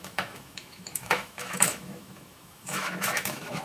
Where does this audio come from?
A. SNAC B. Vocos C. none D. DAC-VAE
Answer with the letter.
D